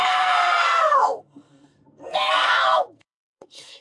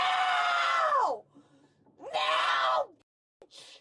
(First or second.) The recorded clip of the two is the second